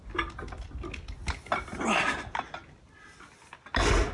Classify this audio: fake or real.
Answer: real